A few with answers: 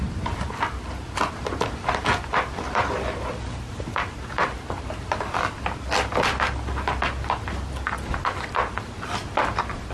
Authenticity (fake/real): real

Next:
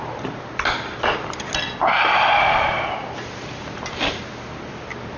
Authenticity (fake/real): real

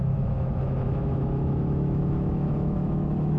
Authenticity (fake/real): fake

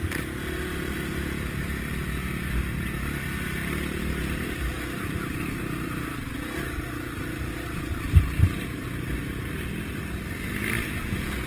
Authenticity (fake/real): real